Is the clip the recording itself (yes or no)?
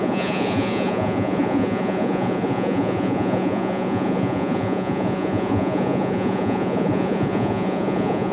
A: no